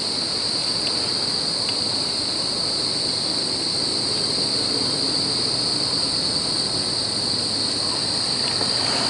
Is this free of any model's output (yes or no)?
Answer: yes